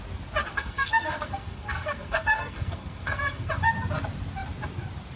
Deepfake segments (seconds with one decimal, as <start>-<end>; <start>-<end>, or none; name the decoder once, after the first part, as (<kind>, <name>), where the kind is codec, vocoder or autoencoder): 0.4-3.5 (codec, SNAC)